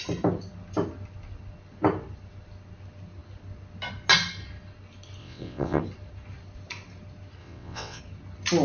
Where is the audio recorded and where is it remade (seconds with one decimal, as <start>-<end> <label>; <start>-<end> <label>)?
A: 0.0-5.2 recorded; 5.2-5.8 remade; 5.8-7.4 recorded; 7.4-8.0 remade; 8.0-8.6 recorded